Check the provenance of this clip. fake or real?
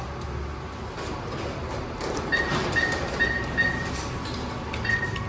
real